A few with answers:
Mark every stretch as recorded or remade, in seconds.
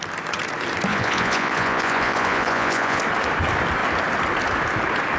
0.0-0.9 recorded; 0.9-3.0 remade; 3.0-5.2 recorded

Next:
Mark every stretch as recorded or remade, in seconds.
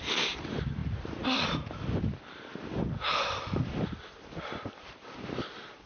0.0-5.9 remade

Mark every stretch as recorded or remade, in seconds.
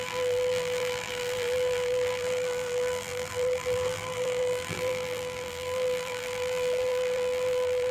0.0-7.9 remade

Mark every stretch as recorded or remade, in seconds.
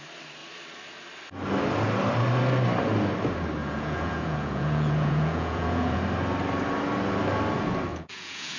0.0-3.6 recorded; 3.6-6.0 remade; 6.0-7.9 recorded; 7.9-8.6 remade